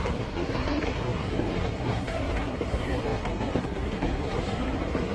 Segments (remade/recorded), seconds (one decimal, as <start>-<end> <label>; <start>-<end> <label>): 0.0-5.1 remade